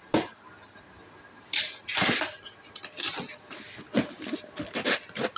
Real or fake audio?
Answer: real